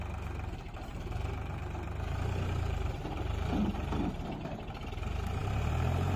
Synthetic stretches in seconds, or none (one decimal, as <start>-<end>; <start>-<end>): 0.9-4.6